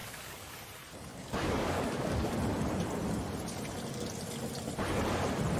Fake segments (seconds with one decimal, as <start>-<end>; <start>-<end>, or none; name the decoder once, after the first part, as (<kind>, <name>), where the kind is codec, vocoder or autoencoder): 0.0-0.5 (codec, DAC); 1.1-2.3